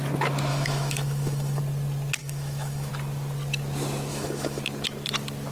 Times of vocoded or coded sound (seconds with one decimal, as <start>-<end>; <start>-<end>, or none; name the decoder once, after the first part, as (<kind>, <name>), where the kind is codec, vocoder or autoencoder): 0.5-1.6 (autoencoder, DAC-VAE); 2.2-2.9; 4.1-4.6